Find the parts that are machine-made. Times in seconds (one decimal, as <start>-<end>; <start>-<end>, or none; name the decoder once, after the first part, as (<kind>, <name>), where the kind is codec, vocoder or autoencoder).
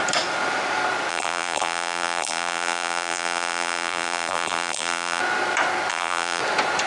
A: 1.1-5.2 (vocoder, BigVGAN v2); 5.9-6.4